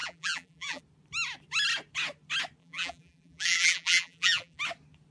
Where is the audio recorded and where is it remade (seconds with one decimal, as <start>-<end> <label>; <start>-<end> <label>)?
0.0-0.8 remade; 0.8-2.6 recorded; 2.6-4.6 remade; 4.6-5.1 recorded